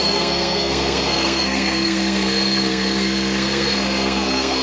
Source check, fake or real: fake